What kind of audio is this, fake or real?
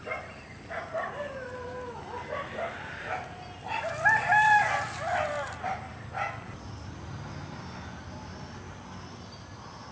real